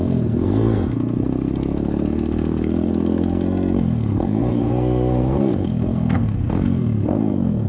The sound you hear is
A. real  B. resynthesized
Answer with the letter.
B